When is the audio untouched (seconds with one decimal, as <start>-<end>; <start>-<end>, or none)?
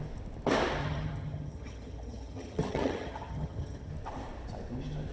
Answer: 0.0-0.8; 3.9-5.1